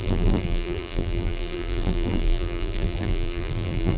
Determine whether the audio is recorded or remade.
remade